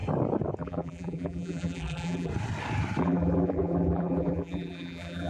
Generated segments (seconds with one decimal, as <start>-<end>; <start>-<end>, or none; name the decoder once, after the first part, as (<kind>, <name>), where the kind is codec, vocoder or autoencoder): 0.6-2.3 (vocoder, BigVGAN v2); 3.0-5.3

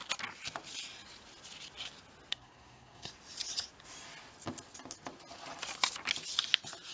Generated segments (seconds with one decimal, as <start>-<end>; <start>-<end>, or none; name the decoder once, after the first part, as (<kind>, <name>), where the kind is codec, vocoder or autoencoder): 2.3-3.1 (codec, SNAC)